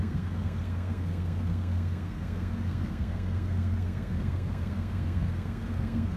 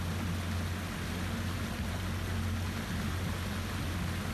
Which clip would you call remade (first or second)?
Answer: first